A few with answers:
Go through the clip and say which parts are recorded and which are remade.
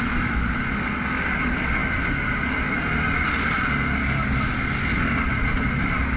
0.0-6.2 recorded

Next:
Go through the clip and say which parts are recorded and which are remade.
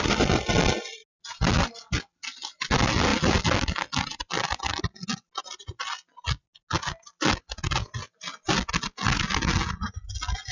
0.0-10.5 recorded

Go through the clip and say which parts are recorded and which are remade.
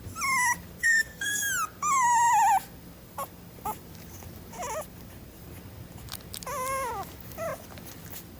0.0-0.8 recorded; 0.8-1.4 remade; 1.4-8.4 recorded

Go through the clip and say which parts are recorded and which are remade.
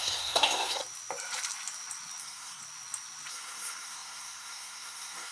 0.0-0.8 remade; 0.8-2.2 recorded; 2.2-2.6 remade; 2.6-3.3 recorded; 3.3-5.3 remade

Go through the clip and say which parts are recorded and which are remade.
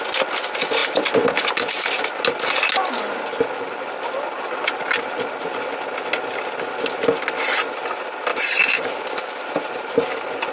0.0-8.3 recorded; 8.3-10.1 remade; 10.1-10.5 recorded